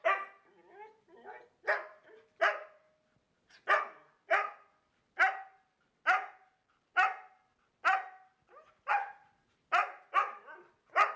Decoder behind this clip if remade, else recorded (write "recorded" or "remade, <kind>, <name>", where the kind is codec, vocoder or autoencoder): recorded